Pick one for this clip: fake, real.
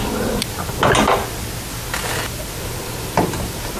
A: real